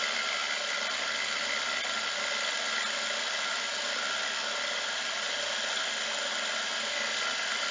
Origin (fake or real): real